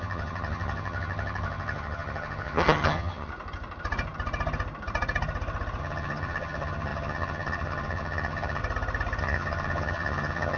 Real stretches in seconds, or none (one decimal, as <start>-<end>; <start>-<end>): 3.3-5.8; 8.6-9.2